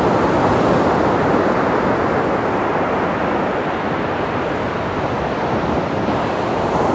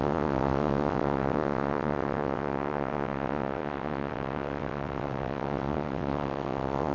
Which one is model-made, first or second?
second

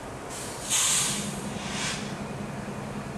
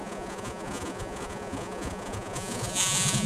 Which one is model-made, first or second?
second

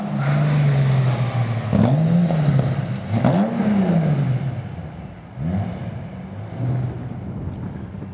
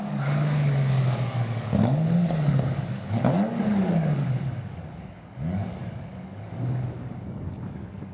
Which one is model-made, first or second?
second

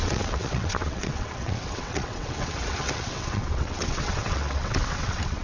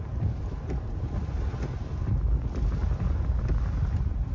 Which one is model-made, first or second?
first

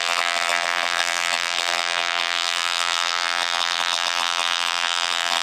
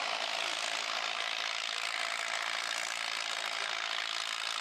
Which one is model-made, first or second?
first